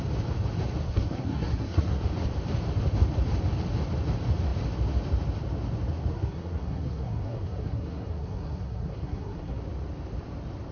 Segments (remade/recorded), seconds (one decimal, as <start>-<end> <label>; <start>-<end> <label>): 0.0-0.8 recorded; 0.8-2.0 remade; 2.0-6.1 recorded; 6.1-9.6 remade; 9.6-10.7 recorded